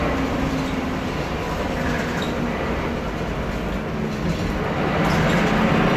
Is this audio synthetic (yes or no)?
no